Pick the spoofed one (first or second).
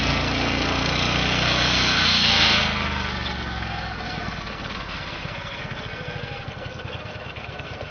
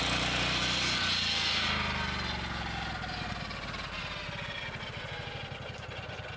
first